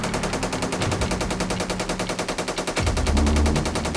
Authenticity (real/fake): real